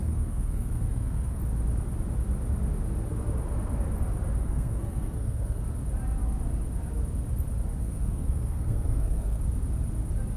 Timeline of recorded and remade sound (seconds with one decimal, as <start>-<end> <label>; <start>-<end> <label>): 0.0-1.4 remade; 1.4-4.4 recorded; 4.4-5.6 remade; 5.6-7.8 recorded; 7.8-9.4 remade; 9.4-10.4 recorded